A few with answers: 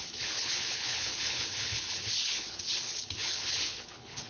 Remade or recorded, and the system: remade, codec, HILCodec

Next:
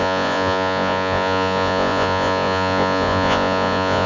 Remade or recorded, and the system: remade, vocoder, Vocos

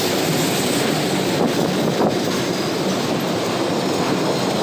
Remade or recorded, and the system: recorded